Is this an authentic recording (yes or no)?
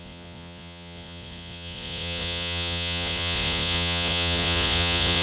no